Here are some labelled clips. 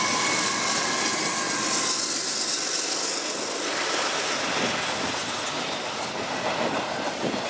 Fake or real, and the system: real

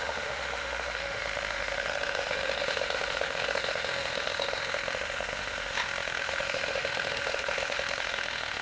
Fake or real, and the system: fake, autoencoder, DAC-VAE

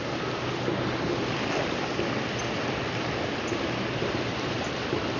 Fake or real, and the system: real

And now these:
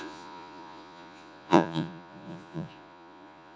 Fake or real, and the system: fake, vocoder, Vocos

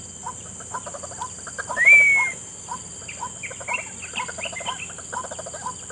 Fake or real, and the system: real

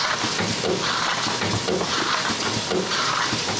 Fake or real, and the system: real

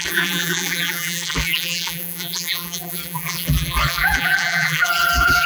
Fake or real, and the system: fake, vocoder, BigVGAN v2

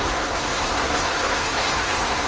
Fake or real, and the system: fake, codec, SNAC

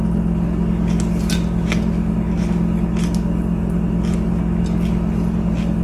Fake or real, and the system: real